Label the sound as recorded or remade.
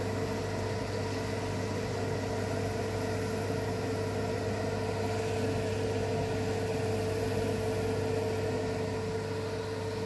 recorded